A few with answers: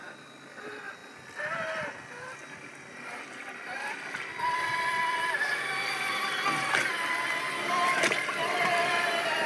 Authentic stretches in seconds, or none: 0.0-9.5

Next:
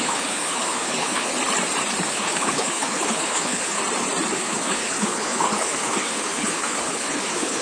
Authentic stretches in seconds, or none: 1.3-2.1; 3.8-4.3

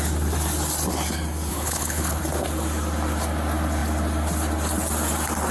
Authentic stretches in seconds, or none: 0.0-1.5; 2.2-5.5

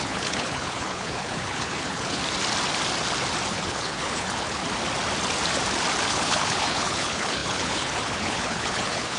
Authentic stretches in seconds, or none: 2.2-3.5; 4.6-6.1

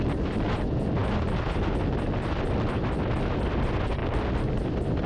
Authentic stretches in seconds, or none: 0.0-5.1